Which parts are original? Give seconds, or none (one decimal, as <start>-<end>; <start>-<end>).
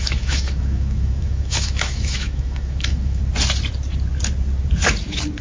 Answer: 3.2-5.4